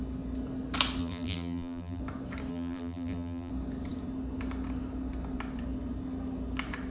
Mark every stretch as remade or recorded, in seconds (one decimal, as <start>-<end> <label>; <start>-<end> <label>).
0.0-1.0 recorded; 1.0-2.0 remade; 2.0-2.5 recorded; 2.5-3.5 remade; 3.5-6.9 recorded

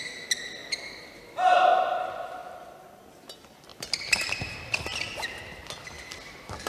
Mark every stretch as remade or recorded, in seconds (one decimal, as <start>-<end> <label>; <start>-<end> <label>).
0.0-6.7 recorded

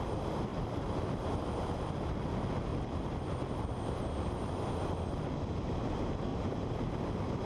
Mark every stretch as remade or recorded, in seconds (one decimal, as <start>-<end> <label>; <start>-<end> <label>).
0.0-0.5 recorded; 0.5-2.3 remade; 2.3-2.7 recorded; 2.7-4.5 remade; 4.5-6.3 recorded; 6.3-6.9 remade; 6.9-7.5 recorded

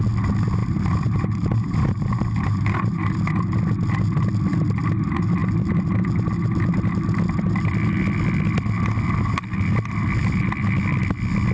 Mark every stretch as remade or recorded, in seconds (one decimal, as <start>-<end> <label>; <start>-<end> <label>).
0.0-0.6 recorded; 0.6-3.1 remade; 3.1-11.5 recorded

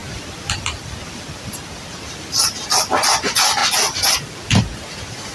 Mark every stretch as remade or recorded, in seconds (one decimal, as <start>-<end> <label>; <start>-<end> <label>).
0.0-2.9 remade; 2.9-3.6 recorded; 3.6-4.6 remade; 4.6-5.3 recorded

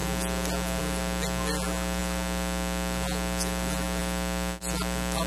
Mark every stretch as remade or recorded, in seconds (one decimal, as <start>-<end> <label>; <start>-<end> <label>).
0.0-5.3 recorded

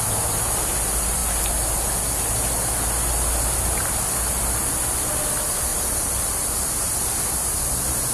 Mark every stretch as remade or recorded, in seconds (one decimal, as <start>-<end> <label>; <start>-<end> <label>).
0.0-5.7 recorded; 5.7-8.1 remade

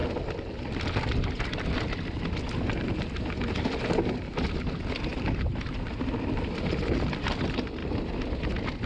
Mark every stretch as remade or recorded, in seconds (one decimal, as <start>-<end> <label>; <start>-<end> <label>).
0.0-8.9 recorded